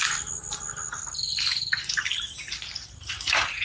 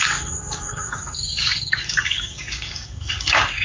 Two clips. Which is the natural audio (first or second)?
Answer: first